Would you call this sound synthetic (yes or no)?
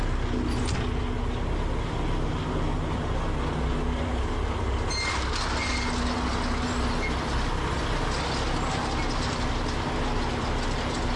no